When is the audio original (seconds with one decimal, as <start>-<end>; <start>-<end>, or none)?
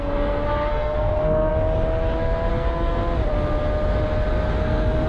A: 1.5-2.5; 3.0-4.5